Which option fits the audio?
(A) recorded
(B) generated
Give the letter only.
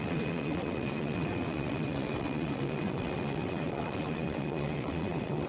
B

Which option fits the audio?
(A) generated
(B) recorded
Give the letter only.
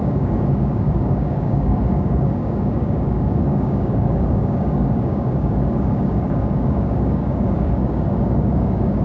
A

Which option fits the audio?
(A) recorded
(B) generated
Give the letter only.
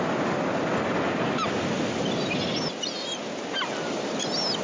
A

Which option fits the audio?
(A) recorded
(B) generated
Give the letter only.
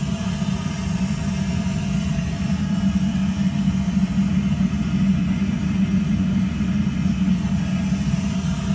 A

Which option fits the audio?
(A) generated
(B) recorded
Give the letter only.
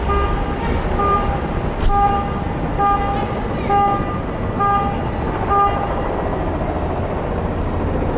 B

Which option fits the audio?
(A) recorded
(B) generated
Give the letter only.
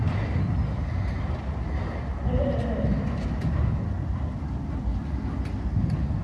A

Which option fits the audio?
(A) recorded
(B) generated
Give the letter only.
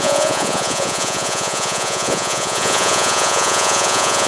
B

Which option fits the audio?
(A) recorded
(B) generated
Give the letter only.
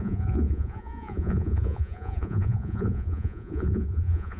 B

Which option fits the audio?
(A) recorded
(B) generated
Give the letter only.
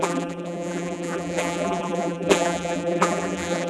B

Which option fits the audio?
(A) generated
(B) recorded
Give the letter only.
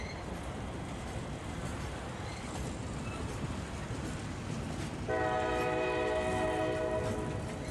B